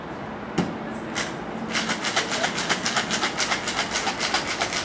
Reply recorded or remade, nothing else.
recorded